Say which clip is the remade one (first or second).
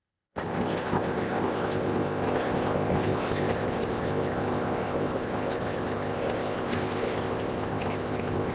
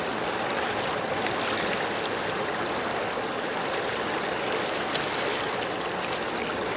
first